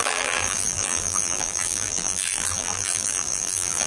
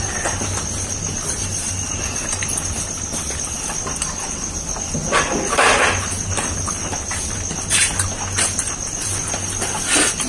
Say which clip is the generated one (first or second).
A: first